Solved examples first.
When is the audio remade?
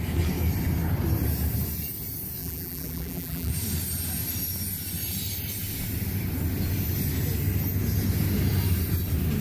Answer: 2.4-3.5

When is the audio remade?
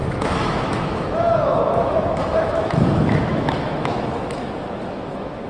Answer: 0.0-5.5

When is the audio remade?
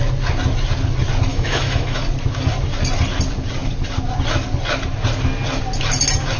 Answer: 1.3-2.0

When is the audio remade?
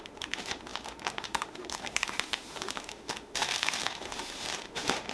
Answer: 0.0-5.1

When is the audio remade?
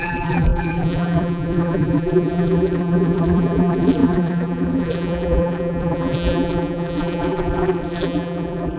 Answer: 0.0-8.8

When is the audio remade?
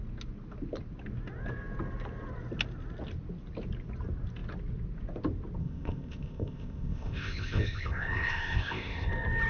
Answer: 5.6-9.1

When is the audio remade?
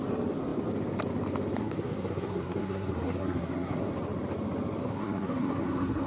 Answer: 1.6-3.9; 4.8-6.1